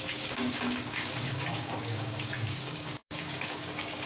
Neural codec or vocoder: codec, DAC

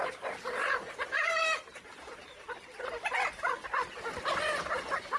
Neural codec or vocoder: none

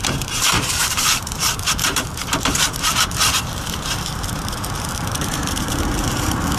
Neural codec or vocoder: vocoder, BigVGAN v2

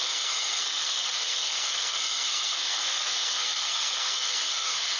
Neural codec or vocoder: codec, SNAC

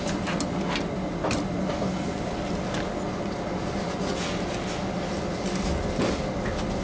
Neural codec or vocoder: none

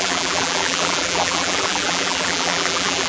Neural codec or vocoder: vocoder, BigVGAN v2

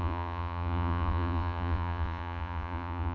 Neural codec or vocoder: vocoder, Vocos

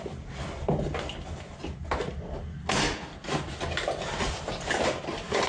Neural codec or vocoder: none